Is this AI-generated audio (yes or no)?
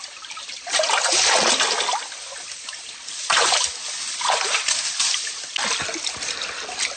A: no